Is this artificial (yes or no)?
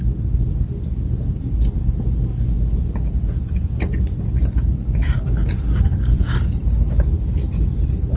no